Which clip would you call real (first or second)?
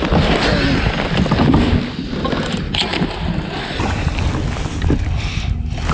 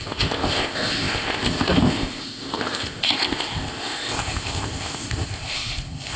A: first